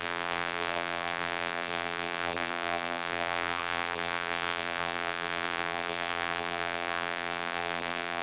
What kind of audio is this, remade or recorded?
remade